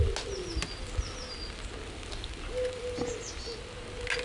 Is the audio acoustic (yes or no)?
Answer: yes